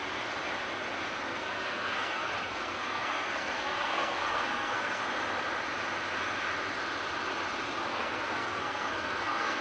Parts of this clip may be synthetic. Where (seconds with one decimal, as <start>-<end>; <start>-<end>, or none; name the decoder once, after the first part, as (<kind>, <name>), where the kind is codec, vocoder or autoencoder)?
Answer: 1.3-5.0 (codec, SNAC); 7.9-9.6